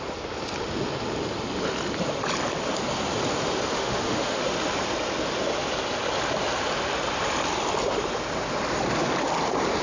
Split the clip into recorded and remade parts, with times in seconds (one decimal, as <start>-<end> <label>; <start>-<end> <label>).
0.0-3.7 recorded; 3.7-4.4 remade; 4.4-9.8 recorded